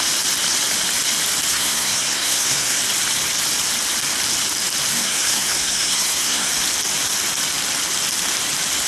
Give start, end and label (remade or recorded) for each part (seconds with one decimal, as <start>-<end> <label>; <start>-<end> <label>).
0.0-1.5 recorded; 1.5-2.8 remade; 2.8-4.9 recorded; 4.9-6.5 remade; 6.5-8.9 recorded